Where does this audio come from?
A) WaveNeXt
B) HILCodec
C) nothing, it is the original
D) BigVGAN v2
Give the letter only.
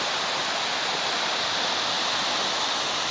C